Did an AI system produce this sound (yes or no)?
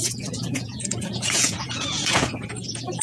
yes